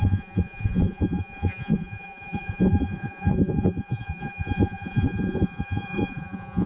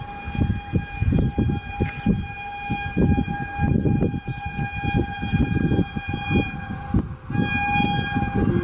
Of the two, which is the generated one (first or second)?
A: first